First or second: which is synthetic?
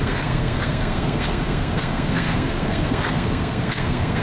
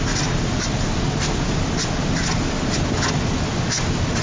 first